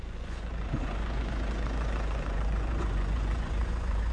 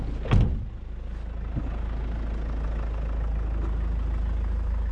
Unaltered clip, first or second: second